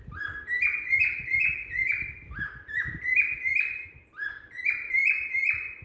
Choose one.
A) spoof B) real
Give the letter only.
B